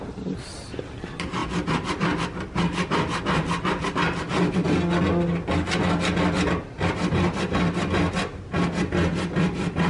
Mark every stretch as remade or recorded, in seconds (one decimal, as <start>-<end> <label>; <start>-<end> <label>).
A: 0.0-9.9 recorded